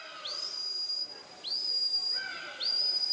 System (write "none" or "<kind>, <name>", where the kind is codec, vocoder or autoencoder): none